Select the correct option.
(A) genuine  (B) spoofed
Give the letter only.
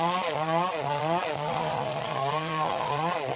B